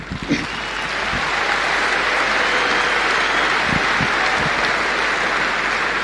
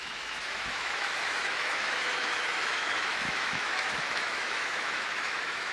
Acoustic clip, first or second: first